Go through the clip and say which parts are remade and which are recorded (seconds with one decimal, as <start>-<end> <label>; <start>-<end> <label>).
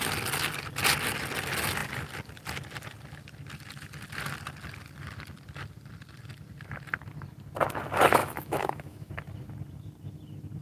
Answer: 0.0-8.2 recorded; 8.2-9.1 remade; 9.1-10.6 recorded